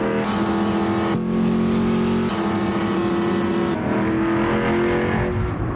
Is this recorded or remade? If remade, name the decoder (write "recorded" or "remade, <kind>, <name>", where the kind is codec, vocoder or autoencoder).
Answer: recorded